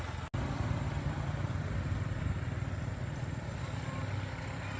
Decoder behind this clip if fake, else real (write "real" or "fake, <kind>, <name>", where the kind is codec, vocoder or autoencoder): real